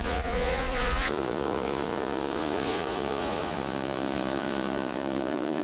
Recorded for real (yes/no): no